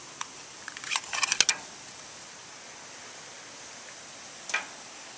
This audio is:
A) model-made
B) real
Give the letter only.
B